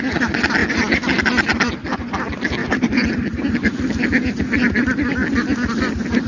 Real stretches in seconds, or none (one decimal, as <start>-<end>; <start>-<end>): 0.0-2.6; 3.1-6.3